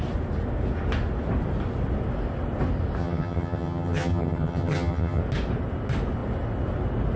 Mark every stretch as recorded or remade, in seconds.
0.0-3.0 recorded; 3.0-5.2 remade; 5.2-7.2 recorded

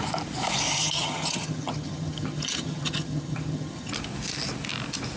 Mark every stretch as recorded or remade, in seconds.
0.0-0.8 recorded; 0.8-3.9 remade; 3.9-5.2 recorded

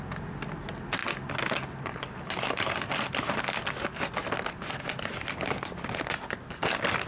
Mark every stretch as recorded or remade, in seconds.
0.0-7.1 recorded

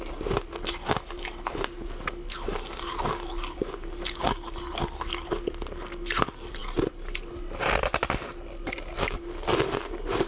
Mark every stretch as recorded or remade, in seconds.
0.0-10.3 recorded

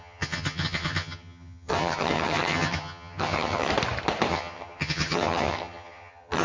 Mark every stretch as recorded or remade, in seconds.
0.0-3.7 remade; 3.7-4.3 recorded; 4.3-6.4 remade

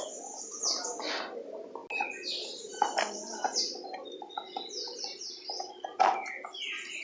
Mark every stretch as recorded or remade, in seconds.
0.0-7.0 recorded

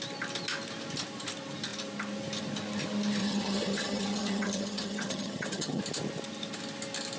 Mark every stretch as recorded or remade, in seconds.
0.0-3.2 recorded; 3.2-5.8 remade; 5.8-7.2 recorded